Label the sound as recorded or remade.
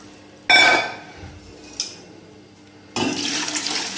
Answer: recorded